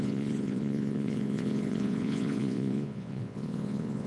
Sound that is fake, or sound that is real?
fake